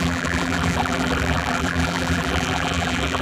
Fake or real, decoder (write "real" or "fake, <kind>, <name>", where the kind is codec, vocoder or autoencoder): fake, vocoder, BigVGAN v2